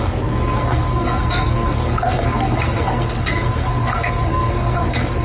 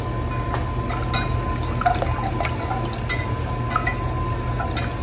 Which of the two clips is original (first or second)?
second